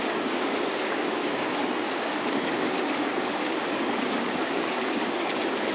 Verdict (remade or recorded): remade